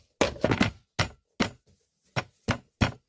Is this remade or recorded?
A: recorded